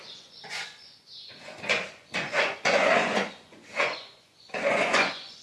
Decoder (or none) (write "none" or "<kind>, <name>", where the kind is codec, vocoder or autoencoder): vocoder, Vocos